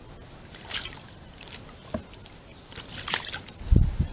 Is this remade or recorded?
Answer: recorded